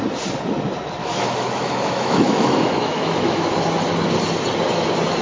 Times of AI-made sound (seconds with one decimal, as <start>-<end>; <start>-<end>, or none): 1.0-3.6